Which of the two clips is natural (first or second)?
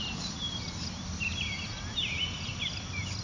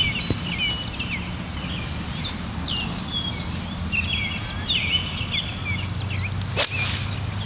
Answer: second